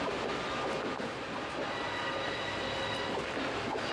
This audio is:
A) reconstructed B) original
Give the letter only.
B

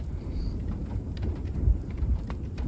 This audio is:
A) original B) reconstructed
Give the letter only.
B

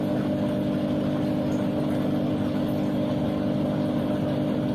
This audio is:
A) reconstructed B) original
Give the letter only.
B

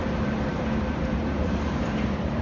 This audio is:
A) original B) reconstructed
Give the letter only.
B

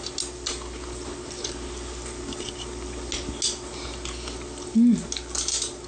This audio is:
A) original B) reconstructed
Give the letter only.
A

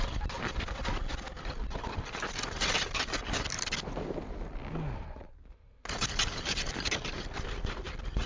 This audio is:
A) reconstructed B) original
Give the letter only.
B